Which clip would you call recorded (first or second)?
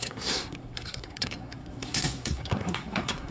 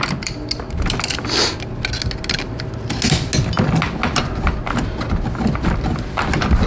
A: second